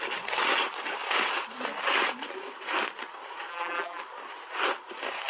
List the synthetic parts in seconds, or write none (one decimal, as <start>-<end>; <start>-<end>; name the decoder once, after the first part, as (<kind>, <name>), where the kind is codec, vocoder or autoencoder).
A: 3.5-4.0 (vocoder, BigVGAN v2)